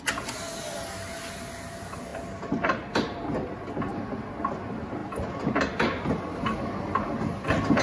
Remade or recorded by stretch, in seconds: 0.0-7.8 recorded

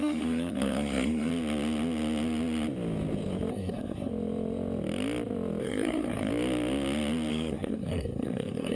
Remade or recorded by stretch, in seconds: 0.0-1.3 remade; 1.3-3.5 recorded; 3.5-4.1 remade; 4.1-5.6 recorded; 5.6-6.3 remade; 6.3-7.3 recorded; 7.3-8.8 remade

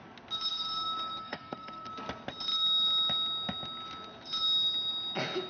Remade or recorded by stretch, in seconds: 0.0-1.2 recorded; 1.2-1.9 remade; 1.9-5.5 recorded